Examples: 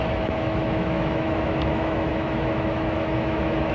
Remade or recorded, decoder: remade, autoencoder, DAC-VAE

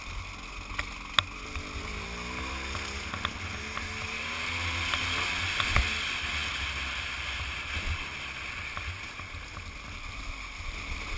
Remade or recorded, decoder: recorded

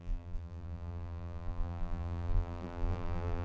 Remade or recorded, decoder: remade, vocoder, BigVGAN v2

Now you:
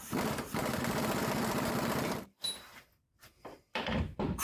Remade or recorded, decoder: remade, vocoder, BigVGAN v2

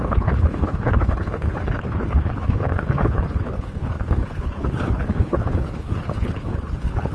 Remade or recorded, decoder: remade, codec, HILCodec